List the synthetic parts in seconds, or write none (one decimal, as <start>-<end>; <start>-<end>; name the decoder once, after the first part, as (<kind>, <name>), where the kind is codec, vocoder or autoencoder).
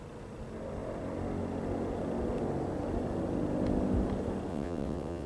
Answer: 4.5-5.3 (vocoder, WaveNeXt)